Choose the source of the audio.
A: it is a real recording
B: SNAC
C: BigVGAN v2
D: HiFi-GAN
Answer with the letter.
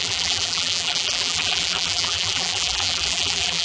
C